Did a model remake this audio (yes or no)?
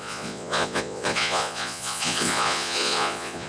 yes